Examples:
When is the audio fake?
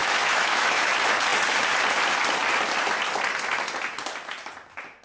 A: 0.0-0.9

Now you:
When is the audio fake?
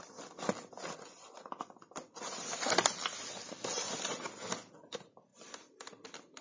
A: 5.3-5.9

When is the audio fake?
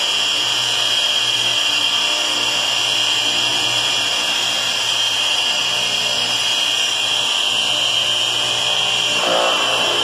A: none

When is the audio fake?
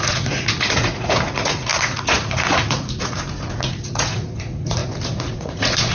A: 0.0-5.9